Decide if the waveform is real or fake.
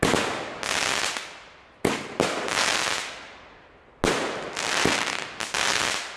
real